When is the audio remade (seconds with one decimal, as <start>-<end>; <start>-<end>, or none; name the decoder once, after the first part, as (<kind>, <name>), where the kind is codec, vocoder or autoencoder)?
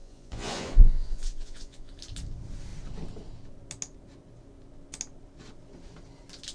0.0-1.9 (vocoder, Vocos)